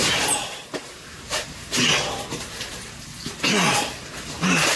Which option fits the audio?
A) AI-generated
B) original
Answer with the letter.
B